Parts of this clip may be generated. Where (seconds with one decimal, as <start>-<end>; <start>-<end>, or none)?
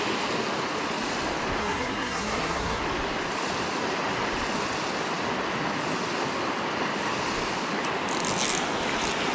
1.6-2.8